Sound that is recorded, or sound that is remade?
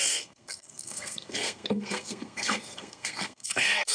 remade